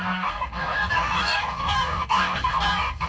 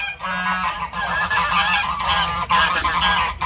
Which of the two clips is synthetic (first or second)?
first